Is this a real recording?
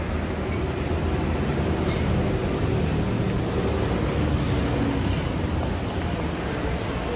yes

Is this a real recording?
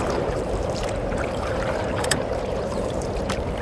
no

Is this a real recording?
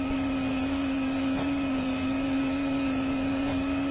no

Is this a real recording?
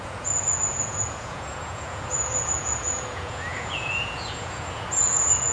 no